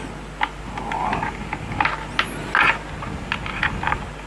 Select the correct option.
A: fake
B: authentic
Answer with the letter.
B